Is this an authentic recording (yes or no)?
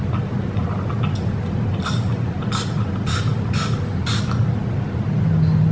yes